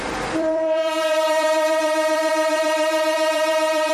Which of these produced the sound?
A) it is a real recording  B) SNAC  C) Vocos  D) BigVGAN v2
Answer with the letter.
D